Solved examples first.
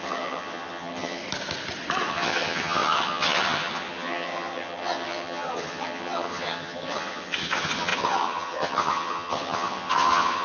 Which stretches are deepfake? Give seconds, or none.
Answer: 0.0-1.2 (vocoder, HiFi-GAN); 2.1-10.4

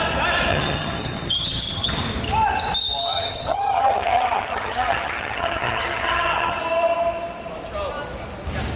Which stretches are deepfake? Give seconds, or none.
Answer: 0.5-2.0 (vocoder, HiFi-GAN); 3.0-6.6